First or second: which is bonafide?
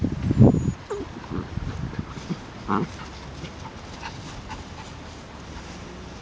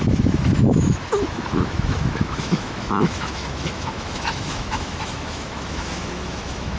first